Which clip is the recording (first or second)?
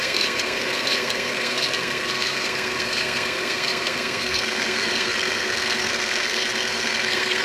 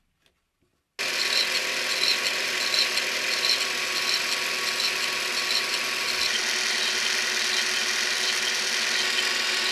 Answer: second